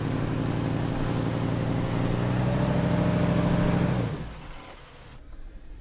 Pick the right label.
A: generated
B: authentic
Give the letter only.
B